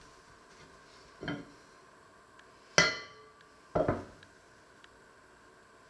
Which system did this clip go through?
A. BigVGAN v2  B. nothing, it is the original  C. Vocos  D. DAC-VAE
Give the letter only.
B